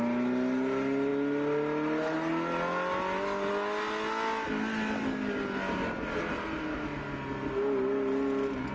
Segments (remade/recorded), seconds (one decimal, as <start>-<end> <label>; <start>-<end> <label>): 0.0-8.7 recorded